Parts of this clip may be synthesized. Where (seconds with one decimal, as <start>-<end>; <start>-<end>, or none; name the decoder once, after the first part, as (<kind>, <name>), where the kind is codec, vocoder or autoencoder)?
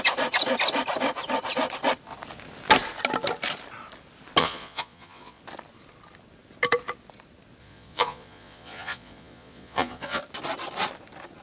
4.4-5.4 (vocoder, Vocos); 7.6-10.2